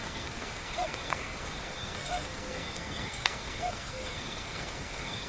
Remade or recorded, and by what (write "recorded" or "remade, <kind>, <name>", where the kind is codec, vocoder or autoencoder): remade, codec, SNAC